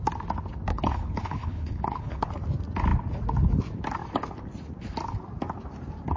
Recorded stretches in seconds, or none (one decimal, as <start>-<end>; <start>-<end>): 0.0-0.7; 2.3-6.2